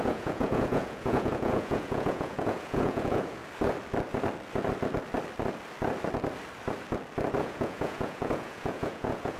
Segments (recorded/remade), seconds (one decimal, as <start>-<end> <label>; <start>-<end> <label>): 0.0-3.4 remade; 3.4-7.4 recorded; 7.4-9.4 remade